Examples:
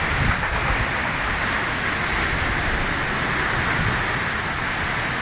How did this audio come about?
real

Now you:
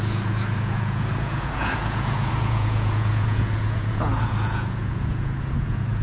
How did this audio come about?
fake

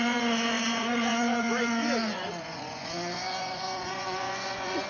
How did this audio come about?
fake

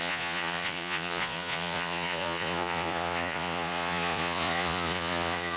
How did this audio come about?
fake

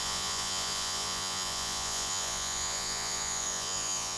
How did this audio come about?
fake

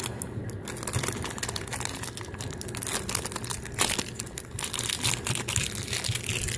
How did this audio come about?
real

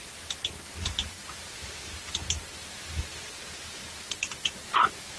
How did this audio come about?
real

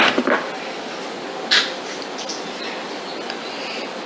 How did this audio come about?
real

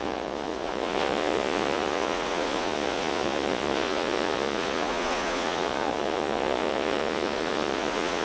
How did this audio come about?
fake